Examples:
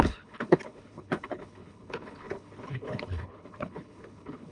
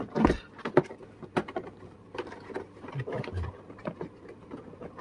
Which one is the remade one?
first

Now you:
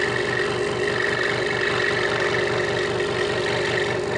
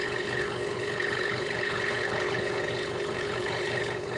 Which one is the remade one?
second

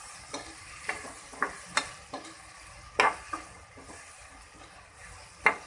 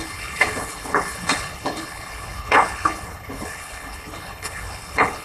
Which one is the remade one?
second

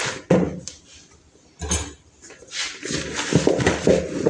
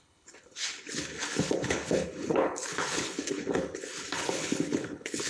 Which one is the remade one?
second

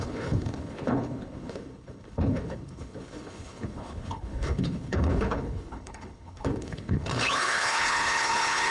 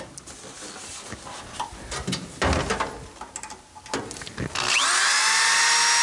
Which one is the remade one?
first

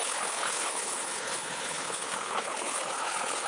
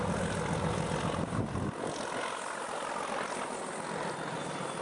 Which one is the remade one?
first